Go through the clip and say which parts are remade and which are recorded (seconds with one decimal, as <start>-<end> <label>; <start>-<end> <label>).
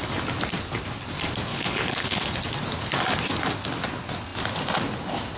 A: 0.0-1.5 recorded; 1.5-2.2 remade; 2.2-5.4 recorded